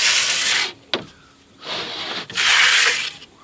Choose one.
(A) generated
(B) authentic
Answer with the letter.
B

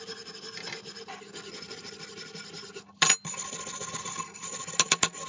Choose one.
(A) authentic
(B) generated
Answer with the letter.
A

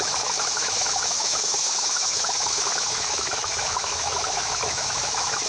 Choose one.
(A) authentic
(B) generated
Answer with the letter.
B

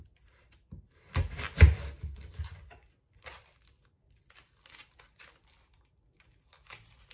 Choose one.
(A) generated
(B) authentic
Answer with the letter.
B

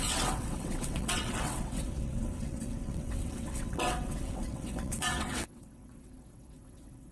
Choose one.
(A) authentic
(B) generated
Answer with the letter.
B